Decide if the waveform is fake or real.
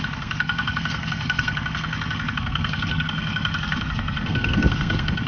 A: fake